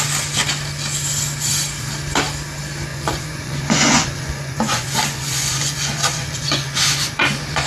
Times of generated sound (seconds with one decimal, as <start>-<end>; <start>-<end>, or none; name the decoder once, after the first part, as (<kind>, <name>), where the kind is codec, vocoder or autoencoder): 2.9-7.7 (vocoder, Vocos)